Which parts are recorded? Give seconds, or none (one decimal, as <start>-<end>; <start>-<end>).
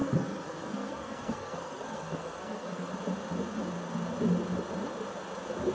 2.9-5.7